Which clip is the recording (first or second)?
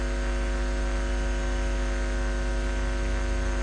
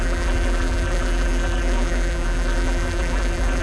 first